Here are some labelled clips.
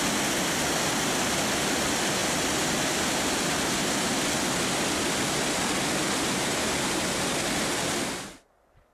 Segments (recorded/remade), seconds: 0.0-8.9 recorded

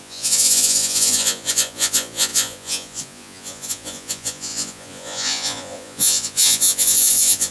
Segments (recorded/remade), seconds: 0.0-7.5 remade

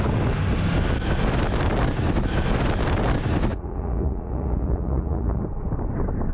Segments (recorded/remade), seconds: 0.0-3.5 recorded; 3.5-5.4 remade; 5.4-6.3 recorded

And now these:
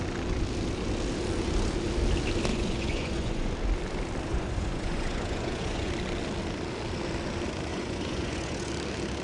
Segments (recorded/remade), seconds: 0.0-2.5 recorded; 2.5-3.5 remade; 3.5-4.3 recorded; 4.3-5.9 remade; 5.9-7.7 recorded; 7.7-8.7 remade; 8.7-9.2 recorded

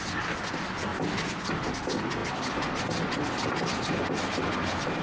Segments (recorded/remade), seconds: 0.0-5.0 recorded

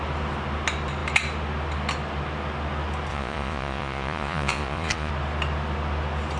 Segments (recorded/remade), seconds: 0.0-3.1 recorded; 3.1-5.1 remade; 5.1-6.4 recorded